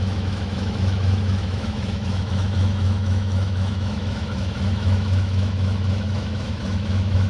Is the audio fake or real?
fake